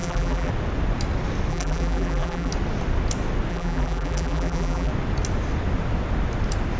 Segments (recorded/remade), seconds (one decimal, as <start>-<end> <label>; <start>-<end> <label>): 0.0-0.5 remade; 0.5-1.5 recorded; 1.5-2.5 remade; 2.5-3.5 recorded; 3.5-4.9 remade; 4.9-6.8 recorded

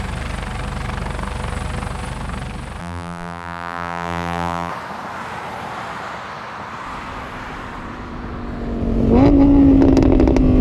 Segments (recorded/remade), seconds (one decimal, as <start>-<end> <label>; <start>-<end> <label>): 0.0-2.8 recorded; 2.8-4.7 remade; 4.7-10.6 recorded

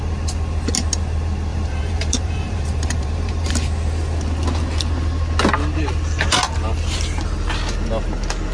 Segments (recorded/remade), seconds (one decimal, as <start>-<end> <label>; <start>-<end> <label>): 0.0-1.5 recorded; 1.5-3.5 remade; 3.5-8.5 recorded

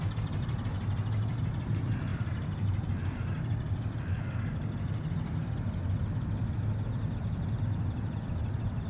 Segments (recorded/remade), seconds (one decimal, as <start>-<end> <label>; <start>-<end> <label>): 0.0-2.1 recorded; 2.1-3.2 remade; 3.2-8.9 recorded

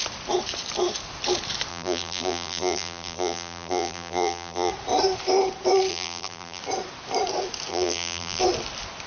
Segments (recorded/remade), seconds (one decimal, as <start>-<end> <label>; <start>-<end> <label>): 0.0-1.7 recorded; 1.7-4.7 remade; 4.7-5.9 recorded; 5.9-6.6 remade; 6.6-7.7 recorded; 7.7-8.4 remade; 8.4-9.1 recorded

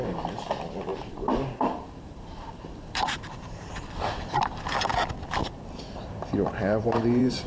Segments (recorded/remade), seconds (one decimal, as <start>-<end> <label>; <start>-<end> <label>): 0.0-0.9 recorded; 0.9-4.6 remade; 4.6-5.4 recorded; 5.4-7.5 remade

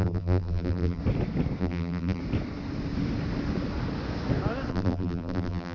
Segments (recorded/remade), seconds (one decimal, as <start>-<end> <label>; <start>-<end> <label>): 0.0-1.0 remade; 1.0-1.6 recorded; 1.6-2.2 remade; 2.2-4.7 recorded; 4.7-5.7 remade

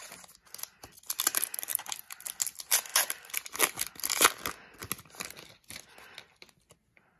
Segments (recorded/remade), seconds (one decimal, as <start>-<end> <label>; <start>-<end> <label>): 0.0-1.7 recorded; 1.7-2.2 remade; 2.2-2.9 recorded; 2.9-3.9 remade; 3.9-7.2 recorded